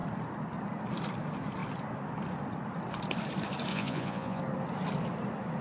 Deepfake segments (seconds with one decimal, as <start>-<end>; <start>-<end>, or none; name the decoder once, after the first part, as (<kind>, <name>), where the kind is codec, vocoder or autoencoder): 3.7-4.4 (vocoder, Vocos)